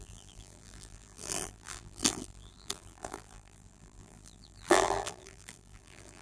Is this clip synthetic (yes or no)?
yes